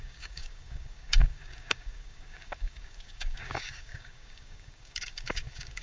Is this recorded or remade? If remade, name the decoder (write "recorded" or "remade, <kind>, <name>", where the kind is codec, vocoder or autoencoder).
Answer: remade, codec, DAC